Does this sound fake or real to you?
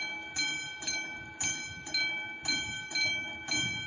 real